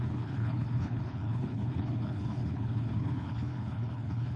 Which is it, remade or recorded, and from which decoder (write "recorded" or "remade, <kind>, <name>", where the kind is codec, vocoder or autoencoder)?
remade, codec, HILCodec